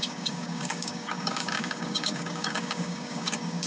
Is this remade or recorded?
remade